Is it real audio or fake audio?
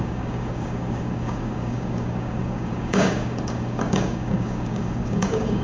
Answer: fake